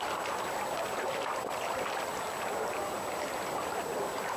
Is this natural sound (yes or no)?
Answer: yes